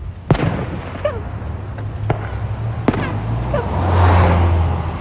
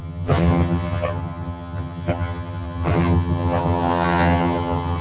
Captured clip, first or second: first